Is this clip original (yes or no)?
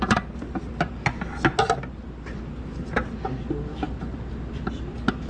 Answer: yes